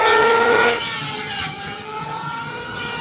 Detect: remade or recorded remade